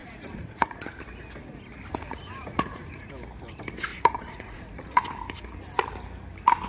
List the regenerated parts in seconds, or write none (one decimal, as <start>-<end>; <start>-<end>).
0.0-1.0; 1.9-3.1; 3.9-5.0